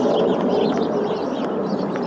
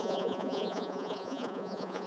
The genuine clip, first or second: first